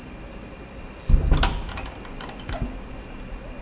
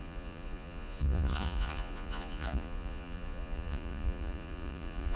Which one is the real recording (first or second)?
first